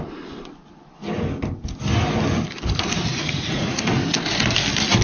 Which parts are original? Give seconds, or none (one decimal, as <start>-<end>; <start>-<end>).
0.0-3.1; 3.9-5.0